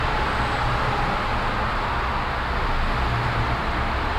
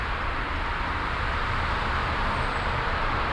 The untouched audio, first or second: first